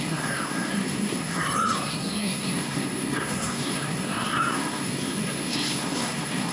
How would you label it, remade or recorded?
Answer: remade